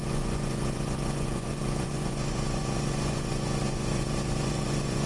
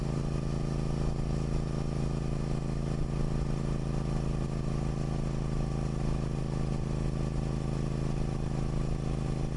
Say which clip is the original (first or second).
second